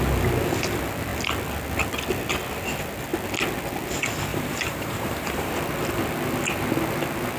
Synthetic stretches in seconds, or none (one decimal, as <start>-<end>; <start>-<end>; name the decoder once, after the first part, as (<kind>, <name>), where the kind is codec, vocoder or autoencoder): 4.3-5.5 (vocoder, BigVGAN v2)